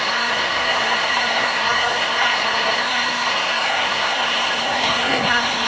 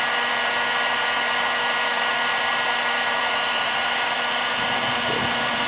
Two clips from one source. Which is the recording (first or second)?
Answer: second